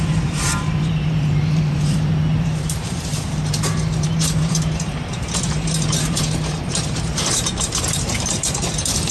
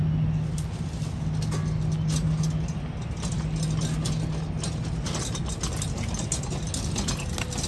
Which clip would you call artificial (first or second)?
first